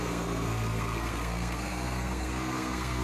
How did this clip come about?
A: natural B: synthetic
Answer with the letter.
B